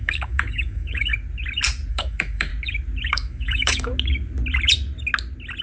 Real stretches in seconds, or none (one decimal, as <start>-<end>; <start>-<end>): 1.1-1.9; 2.5-3.1; 3.9-5.6